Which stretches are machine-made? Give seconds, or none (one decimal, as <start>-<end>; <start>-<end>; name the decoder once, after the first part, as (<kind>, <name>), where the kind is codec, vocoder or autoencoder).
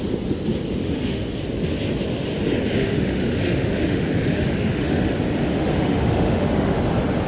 0.8-1.3 (autoencoder, DAC-VAE); 2.8-5.1; 5.5-6.8